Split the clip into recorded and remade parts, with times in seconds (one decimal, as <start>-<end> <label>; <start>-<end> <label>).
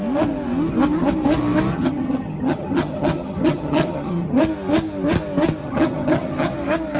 0.0-1.7 recorded; 1.7-4.4 remade; 4.4-5.6 recorded; 5.6-6.5 remade; 6.5-7.0 recorded